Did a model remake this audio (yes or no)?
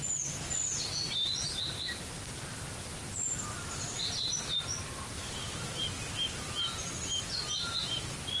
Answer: no